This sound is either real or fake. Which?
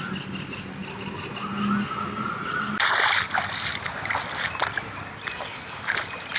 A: real